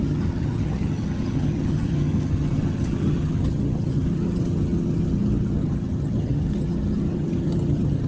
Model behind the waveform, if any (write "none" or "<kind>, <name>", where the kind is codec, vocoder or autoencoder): vocoder, HiFi-GAN